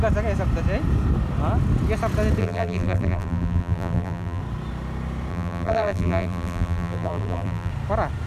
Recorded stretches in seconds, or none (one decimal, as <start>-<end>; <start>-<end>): 0.0-2.4; 4.4-5.3; 7.7-8.3